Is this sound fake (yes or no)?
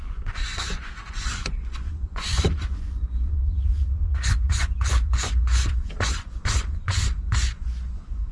yes